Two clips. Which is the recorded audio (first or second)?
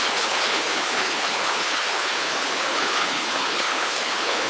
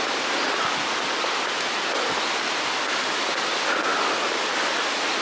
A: second